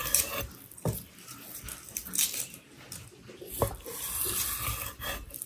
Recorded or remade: recorded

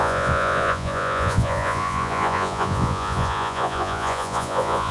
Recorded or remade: remade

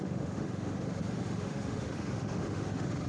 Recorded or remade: remade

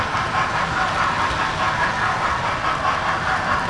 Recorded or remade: recorded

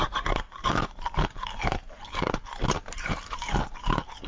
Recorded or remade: remade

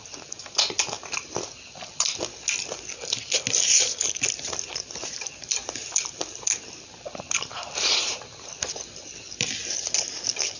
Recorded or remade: recorded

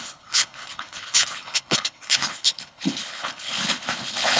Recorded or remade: remade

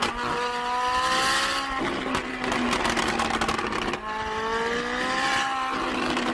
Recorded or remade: recorded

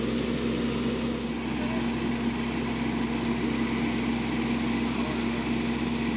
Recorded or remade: recorded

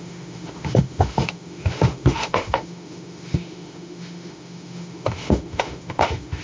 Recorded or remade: remade